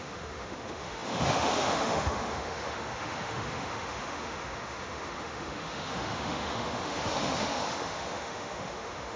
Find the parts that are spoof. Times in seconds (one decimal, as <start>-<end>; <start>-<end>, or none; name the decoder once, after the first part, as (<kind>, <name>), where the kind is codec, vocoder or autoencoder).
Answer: 0.0-9.2 (autoencoder, DAC-VAE)